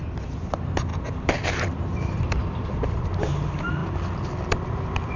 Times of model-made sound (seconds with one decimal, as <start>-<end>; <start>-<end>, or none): none